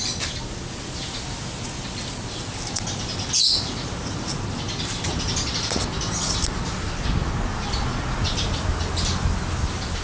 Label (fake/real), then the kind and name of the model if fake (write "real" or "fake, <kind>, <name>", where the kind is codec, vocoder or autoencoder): real